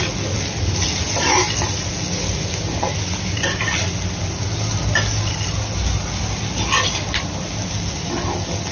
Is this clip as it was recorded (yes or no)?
yes